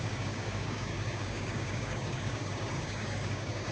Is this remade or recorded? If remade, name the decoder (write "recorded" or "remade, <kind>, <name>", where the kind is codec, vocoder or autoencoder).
remade, codec, DAC